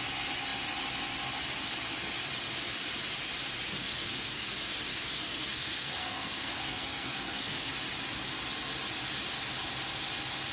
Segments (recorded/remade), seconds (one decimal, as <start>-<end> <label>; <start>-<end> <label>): 0.0-3.8 recorded; 3.8-4.5 remade; 4.5-4.9 recorded; 4.9-7.7 remade; 7.7-10.5 recorded